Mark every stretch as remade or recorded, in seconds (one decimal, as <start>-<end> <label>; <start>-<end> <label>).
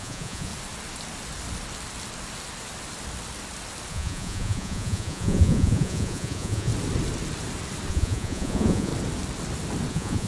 0.0-0.5 remade; 0.5-3.9 recorded; 3.9-6.7 remade; 6.7-7.9 recorded; 7.9-8.9 remade; 8.9-9.9 recorded; 9.9-10.3 remade